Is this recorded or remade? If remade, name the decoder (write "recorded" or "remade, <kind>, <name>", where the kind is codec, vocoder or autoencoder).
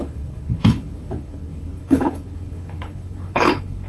remade, codec, HILCodec